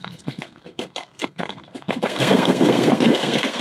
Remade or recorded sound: remade